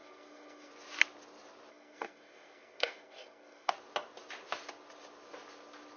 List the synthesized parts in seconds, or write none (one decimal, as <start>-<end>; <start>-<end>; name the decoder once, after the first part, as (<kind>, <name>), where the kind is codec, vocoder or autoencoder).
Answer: 0.0-0.7 (codec, SNAC); 1.7-3.7